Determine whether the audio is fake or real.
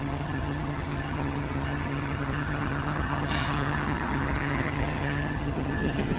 fake